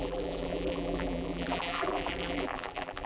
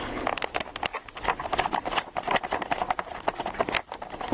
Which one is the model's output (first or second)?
first